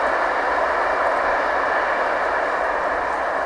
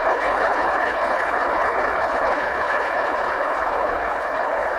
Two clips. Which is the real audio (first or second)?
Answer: first